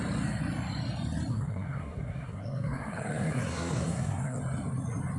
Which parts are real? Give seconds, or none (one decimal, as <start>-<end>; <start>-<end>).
0.0-1.3; 4.4-5.2